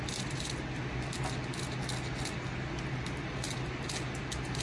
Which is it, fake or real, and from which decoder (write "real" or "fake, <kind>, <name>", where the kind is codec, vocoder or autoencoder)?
real